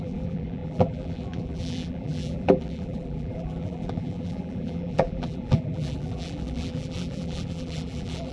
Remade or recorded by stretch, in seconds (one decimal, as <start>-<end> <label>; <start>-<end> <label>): 0.0-8.3 remade